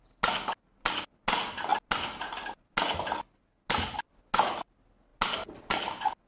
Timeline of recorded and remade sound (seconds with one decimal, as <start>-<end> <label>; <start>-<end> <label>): 0.0-6.3 recorded